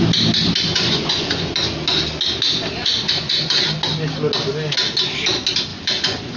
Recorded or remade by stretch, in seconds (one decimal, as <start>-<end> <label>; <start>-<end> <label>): 0.0-0.7 recorded; 0.7-1.5 remade; 1.5-2.8 recorded; 2.8-3.6 remade; 3.6-5.7 recorded; 5.7-6.4 remade